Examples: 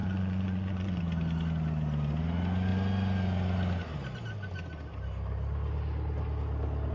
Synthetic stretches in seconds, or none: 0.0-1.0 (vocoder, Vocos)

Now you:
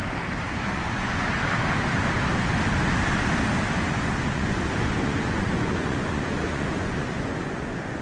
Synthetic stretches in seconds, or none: 0.5-1.4 (vocoder, Vocos); 3.9-8.0

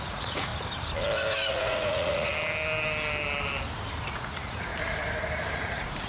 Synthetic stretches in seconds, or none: 0.0-0.5 (vocoder, Vocos); 1.5-2.3; 4.1-4.7; 5.5-6.1

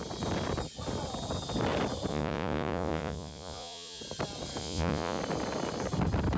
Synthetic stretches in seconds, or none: 2.1-4.0 (vocoder, Vocos); 4.6-5.2

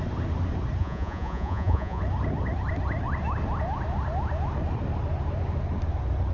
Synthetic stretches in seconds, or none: 0.8-2.0 (vocoder, Vocos)

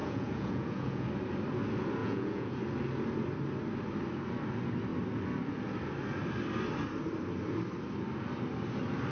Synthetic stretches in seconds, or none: 0.0-1.1 (vocoder, Vocos); 2.0-2.6